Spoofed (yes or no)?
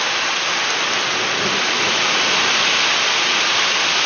no